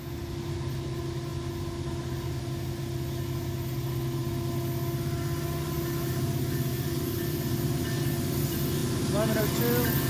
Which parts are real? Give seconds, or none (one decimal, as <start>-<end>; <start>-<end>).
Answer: 0.0-10.1